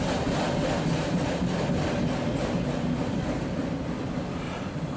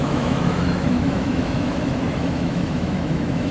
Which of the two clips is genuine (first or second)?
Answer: first